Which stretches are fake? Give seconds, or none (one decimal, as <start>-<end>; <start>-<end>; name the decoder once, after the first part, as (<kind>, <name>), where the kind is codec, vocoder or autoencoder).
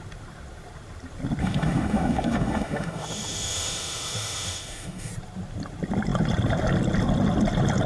1.4-5.1 (autoencoder, DAC-VAE)